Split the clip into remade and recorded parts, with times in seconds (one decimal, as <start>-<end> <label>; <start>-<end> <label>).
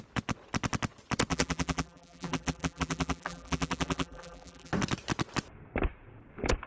0.0-1.3 recorded; 1.3-4.7 remade; 4.7-6.7 recorded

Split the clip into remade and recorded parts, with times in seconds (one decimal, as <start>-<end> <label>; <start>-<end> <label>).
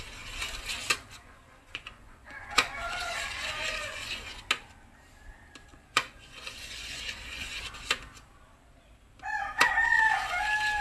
0.0-0.9 recorded; 0.9-4.4 remade; 4.4-5.7 recorded; 5.7-7.6 remade; 7.6-10.8 recorded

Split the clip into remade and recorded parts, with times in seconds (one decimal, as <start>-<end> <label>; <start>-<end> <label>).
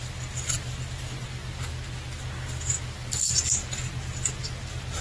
0.0-5.0 recorded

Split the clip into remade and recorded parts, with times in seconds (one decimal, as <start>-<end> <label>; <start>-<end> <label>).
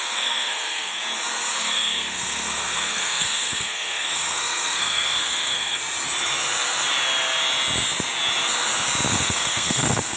0.0-1.0 remade; 1.0-1.6 recorded; 1.6-5.8 remade; 5.8-9.1 recorded; 9.1-10.2 remade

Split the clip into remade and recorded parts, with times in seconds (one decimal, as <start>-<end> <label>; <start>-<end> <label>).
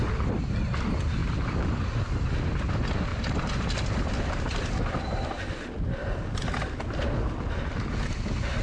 0.0-1.2 recorded; 1.2-1.8 remade; 1.8-3.1 recorded; 3.1-5.5 remade; 5.5-8.6 recorded